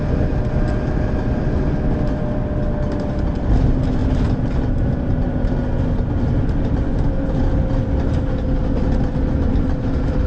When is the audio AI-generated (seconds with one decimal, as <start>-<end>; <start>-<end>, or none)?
none